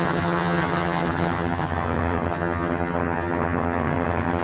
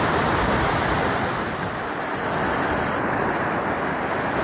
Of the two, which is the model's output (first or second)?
first